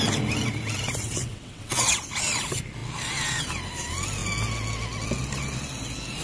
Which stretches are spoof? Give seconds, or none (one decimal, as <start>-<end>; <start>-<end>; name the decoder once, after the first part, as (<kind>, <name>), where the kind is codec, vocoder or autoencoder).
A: 1.0-2.0 (vocoder, WaveNeXt)